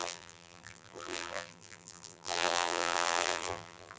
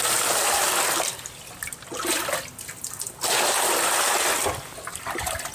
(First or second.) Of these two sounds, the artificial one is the first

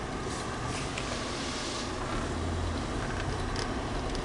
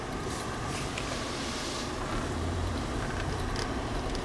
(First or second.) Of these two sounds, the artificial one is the second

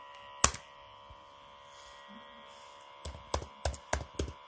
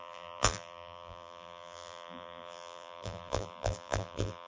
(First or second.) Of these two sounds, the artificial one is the second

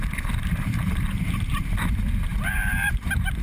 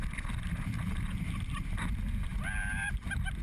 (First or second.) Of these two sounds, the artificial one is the first